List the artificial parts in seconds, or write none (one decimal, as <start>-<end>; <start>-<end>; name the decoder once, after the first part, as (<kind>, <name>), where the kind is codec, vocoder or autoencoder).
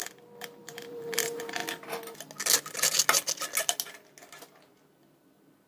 0.6-1.6 (vocoder, BigVGAN v2); 5.0-5.7